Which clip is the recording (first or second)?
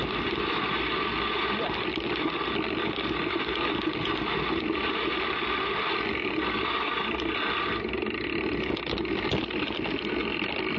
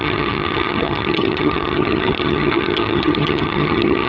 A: first